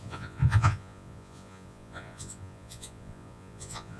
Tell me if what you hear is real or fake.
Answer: fake